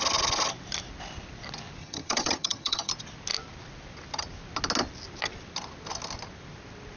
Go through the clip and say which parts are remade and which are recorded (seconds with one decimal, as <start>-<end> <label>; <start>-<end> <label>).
0.0-1.8 recorded; 1.8-2.9 remade; 2.9-7.0 recorded